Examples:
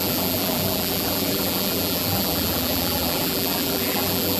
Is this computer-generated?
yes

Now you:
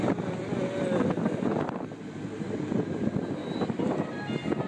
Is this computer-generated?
no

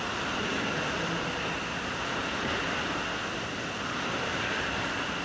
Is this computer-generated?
yes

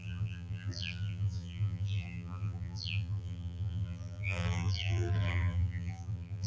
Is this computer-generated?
yes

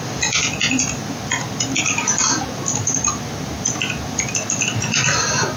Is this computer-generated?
no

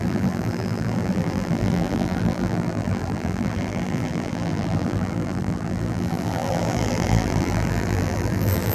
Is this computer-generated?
yes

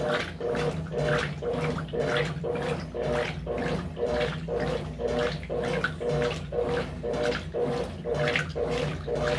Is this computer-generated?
no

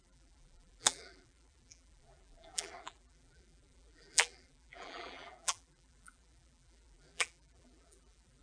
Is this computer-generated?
yes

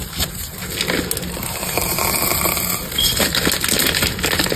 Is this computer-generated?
no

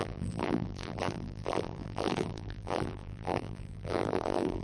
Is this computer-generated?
yes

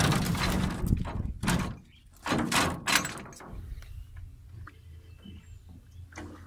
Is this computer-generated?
no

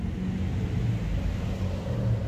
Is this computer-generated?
no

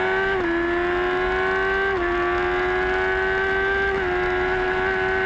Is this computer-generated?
no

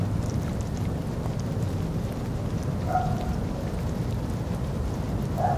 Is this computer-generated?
no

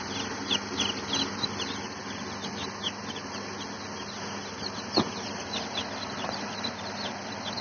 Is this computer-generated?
no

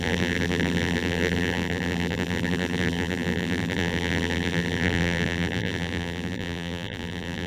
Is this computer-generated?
yes